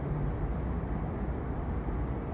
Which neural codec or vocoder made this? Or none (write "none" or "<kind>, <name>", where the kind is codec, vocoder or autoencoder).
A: none